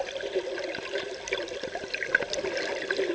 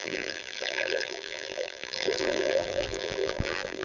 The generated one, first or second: second